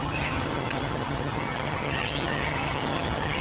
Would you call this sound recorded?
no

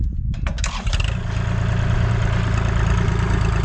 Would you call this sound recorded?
yes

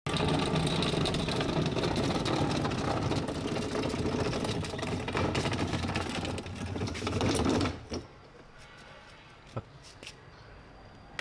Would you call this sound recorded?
yes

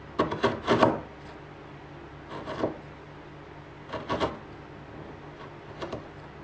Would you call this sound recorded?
yes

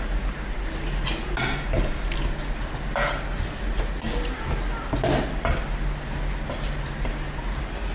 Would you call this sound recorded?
yes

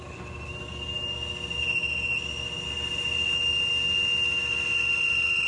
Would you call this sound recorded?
yes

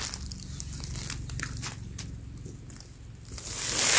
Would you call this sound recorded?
yes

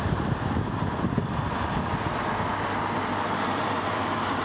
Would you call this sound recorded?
yes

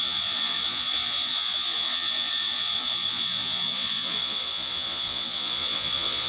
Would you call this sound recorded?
no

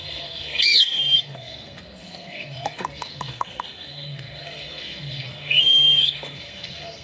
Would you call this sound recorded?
no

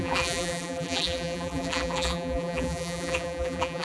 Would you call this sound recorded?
no